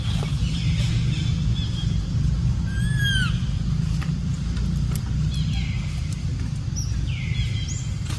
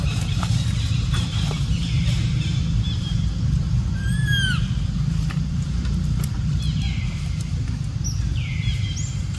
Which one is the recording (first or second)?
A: first